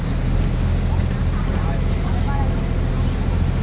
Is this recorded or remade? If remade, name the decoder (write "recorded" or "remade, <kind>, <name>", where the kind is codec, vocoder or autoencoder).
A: recorded